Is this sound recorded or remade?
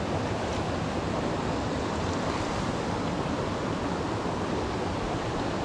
recorded